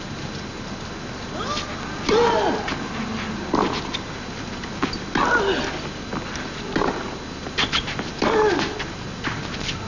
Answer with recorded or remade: recorded